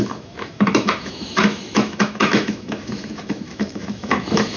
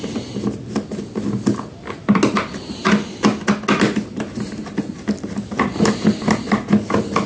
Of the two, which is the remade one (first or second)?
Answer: first